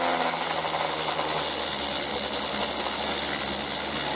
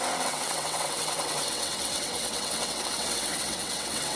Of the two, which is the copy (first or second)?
second